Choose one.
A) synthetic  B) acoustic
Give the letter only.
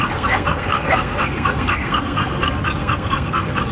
A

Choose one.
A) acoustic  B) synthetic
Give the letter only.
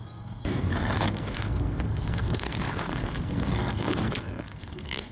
B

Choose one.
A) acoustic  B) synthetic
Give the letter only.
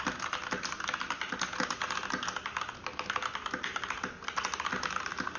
A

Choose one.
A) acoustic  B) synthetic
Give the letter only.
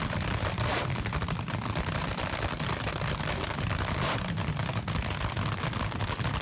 B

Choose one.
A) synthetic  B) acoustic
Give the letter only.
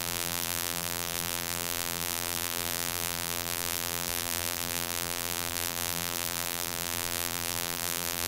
A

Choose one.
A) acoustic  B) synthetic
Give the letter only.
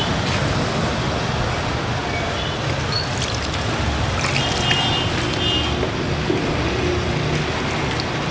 A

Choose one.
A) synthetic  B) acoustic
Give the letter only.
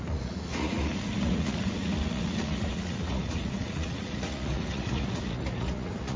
A